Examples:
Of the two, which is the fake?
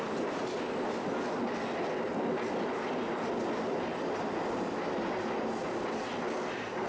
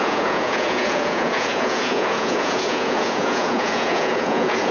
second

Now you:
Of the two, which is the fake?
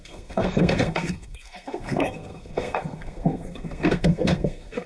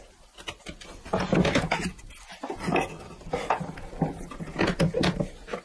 first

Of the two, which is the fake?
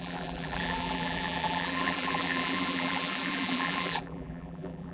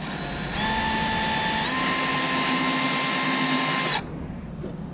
first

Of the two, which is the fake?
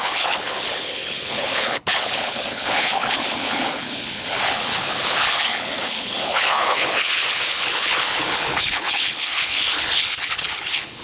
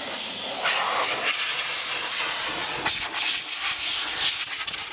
first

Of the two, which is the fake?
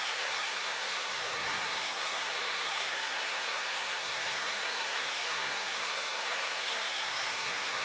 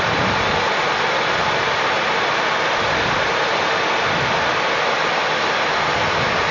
first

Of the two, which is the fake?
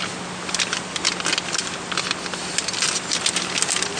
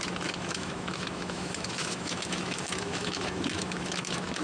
second